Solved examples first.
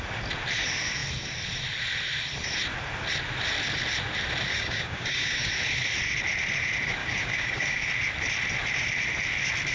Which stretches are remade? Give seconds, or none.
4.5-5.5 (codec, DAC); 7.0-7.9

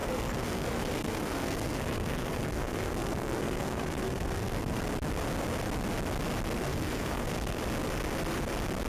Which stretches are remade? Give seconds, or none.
0.0-4.8 (codec, SNAC); 6.6-7.6

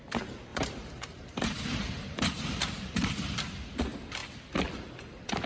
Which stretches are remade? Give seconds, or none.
0.5-3.8 (vocoder, BigVGAN v2)

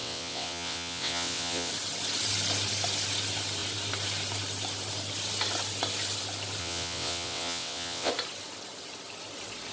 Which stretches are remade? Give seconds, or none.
0.0-1.7 (vocoder, WaveNeXt); 6.6-8.1

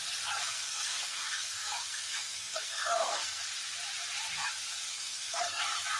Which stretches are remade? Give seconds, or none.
0.4-3.4 (codec, SNAC); 4.9-5.6

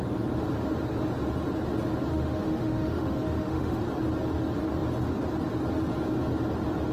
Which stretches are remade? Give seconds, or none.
2.1-3.8 (autoencoder, DAC-VAE)